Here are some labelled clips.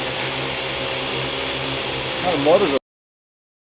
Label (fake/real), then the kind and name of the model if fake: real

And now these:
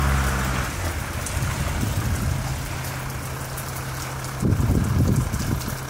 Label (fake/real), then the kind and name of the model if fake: real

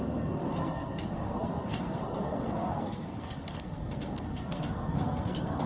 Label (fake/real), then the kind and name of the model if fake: fake, codec, SNAC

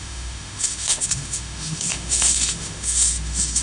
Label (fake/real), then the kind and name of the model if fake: fake, autoencoder, DAC-VAE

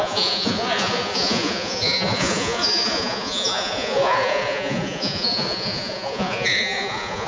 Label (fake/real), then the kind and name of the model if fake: fake, vocoder, Vocos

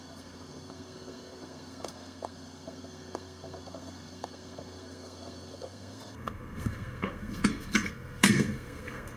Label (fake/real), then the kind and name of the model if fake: fake, codec, SNAC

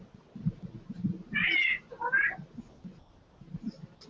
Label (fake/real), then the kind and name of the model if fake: real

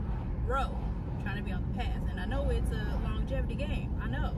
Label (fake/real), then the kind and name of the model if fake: real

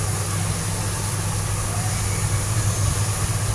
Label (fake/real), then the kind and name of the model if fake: real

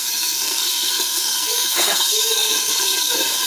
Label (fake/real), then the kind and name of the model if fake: fake, codec, SNAC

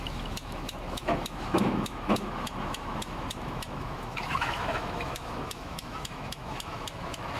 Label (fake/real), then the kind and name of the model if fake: fake, autoencoder, DAC-VAE